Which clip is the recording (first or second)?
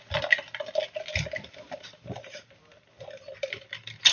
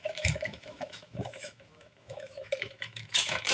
first